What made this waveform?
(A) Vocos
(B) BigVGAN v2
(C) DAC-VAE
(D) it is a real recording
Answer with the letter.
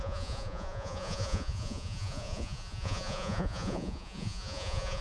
A